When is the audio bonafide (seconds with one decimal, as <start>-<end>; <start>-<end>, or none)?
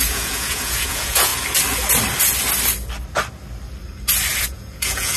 1.3-4.4